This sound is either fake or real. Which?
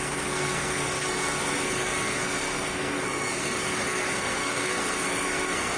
fake